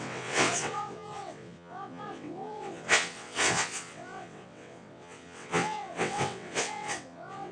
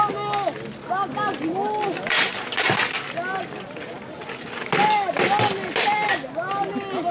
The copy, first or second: first